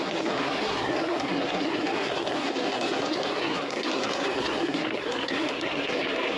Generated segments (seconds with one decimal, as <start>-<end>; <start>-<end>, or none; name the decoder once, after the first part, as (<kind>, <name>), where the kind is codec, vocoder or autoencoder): 0.0-6.4 (codec, SNAC)